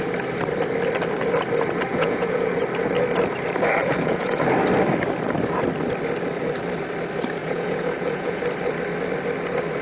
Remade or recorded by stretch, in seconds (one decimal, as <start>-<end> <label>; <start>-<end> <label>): 0.0-1.9 recorded; 1.9-2.6 remade; 2.6-3.8 recorded; 3.8-4.4 remade; 4.4-7.4 recorded; 7.4-8.4 remade; 8.4-9.8 recorded